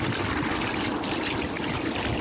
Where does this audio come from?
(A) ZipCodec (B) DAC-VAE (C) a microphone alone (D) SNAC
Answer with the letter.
C